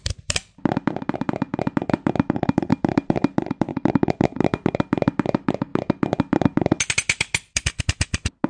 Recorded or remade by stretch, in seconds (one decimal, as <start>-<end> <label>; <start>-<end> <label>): 0.0-8.5 recorded